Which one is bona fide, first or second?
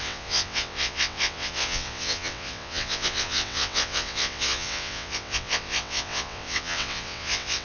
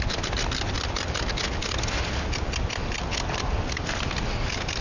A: second